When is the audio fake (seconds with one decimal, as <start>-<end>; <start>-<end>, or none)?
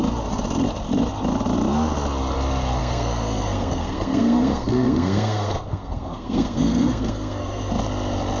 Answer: 2.8-7.7